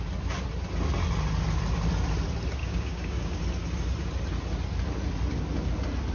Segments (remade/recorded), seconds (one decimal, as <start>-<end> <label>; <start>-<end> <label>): 0.0-2.6 recorded; 2.6-3.4 remade; 3.4-6.1 recorded